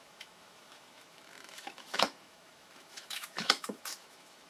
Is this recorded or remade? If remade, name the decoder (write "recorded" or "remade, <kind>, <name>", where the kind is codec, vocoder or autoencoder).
remade, autoencoder, DAC-VAE